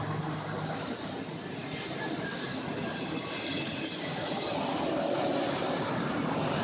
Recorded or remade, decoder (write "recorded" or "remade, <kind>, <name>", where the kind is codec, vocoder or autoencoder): recorded